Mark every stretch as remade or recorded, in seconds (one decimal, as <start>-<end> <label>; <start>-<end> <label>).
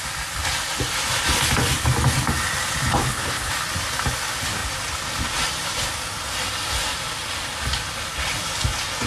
0.0-2.9 recorded; 2.9-3.5 remade; 3.5-9.1 recorded